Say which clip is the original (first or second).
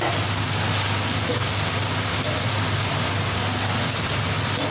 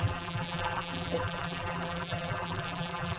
first